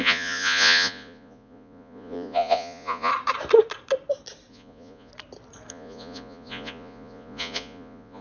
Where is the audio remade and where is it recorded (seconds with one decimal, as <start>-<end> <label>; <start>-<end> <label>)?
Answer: 0.0-3.1 remade; 3.1-4.5 recorded; 4.5-5.1 remade; 5.1-5.7 recorded; 5.7-8.2 remade